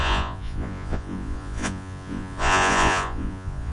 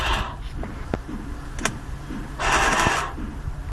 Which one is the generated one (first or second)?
first